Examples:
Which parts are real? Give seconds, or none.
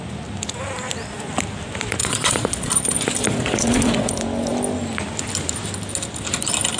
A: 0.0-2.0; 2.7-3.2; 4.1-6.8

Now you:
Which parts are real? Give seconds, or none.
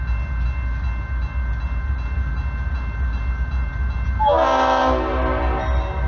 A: 0.0-6.1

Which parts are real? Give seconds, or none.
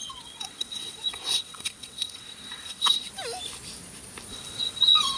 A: 3.1-4.3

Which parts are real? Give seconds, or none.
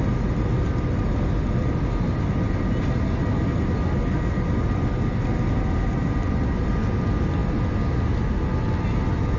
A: 0.0-9.4